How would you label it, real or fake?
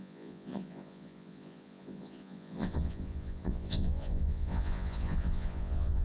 fake